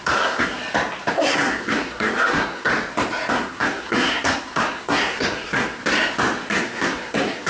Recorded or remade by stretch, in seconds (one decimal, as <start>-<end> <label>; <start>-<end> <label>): 0.0-0.6 remade; 0.6-1.1 recorded; 1.1-2.7 remade; 2.7-3.3 recorded; 3.3-5.8 remade; 5.8-6.5 recorded; 6.5-7.5 remade